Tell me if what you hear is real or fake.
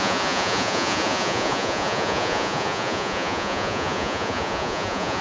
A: fake